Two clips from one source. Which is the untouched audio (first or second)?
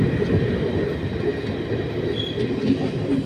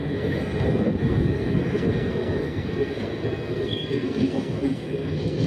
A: first